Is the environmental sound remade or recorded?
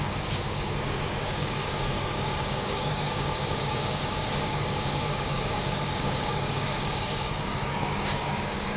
remade